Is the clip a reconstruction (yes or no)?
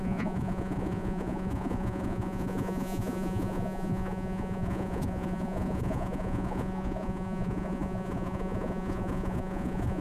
yes